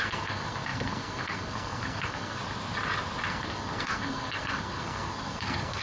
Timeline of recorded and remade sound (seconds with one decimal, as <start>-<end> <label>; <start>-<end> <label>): 0.0-2.4 remade; 2.4-3.3 recorded; 3.3-5.8 remade